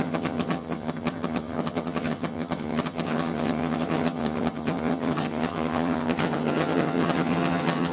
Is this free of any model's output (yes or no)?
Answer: no